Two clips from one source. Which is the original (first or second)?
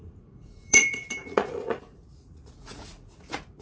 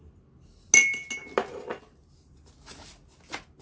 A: second